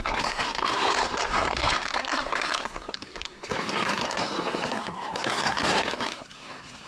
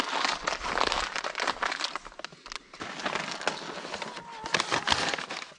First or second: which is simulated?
first